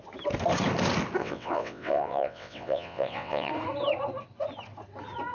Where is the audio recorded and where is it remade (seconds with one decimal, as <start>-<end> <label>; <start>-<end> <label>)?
0.0-1.2 recorded; 1.2-3.5 remade; 3.5-5.3 recorded